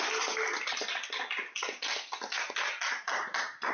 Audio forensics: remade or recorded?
recorded